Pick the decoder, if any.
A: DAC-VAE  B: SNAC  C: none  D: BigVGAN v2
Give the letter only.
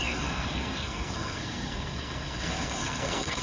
B